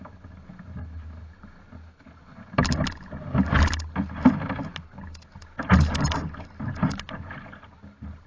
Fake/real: real